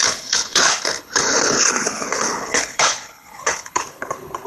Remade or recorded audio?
remade